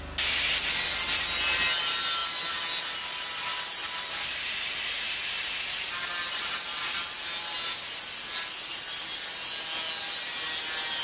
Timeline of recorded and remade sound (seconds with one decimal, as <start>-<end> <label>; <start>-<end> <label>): 0.0-11.0 recorded